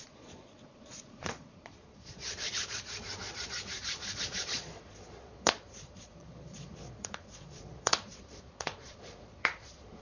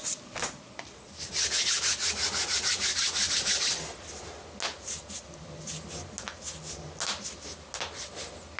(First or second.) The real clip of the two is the second